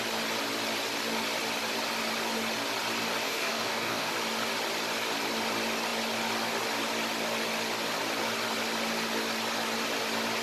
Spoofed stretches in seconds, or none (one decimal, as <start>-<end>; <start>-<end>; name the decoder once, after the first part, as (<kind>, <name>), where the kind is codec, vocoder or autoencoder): 3.2-4.1 (codec, DAC)